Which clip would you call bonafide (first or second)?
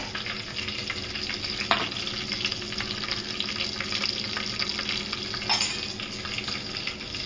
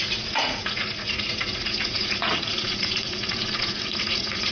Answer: first